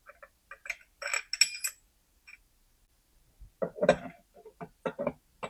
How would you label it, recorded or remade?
recorded